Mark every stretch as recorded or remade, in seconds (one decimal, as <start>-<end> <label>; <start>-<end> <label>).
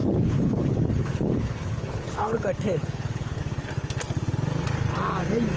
0.0-3.4 remade; 3.4-5.6 recorded